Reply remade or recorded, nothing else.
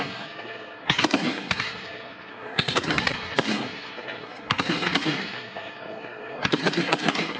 remade